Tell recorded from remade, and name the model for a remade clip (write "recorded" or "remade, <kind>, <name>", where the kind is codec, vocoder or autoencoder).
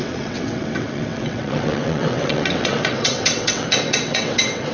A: remade, vocoder, WaveNeXt